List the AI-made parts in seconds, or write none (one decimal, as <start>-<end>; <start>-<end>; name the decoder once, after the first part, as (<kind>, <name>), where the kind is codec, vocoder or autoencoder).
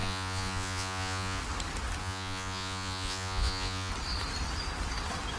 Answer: 0.0-1.4 (vocoder, Vocos); 2.0-3.9